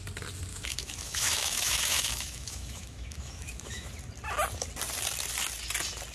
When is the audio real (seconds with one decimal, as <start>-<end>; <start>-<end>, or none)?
0.0-0.5; 3.9-6.1